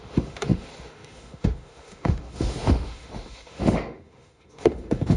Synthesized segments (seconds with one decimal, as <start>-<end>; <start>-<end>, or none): 0.0-5.2